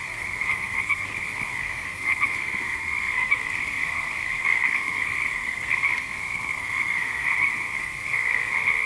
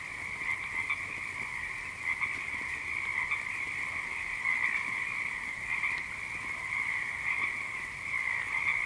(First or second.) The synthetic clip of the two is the first